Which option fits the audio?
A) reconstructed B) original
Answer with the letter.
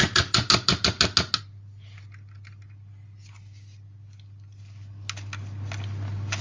B